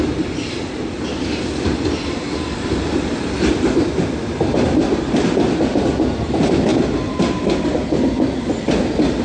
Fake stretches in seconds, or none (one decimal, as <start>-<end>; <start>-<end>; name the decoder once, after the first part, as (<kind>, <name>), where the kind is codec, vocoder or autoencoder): none